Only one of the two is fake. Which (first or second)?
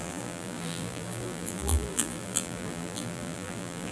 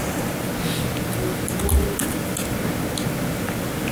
first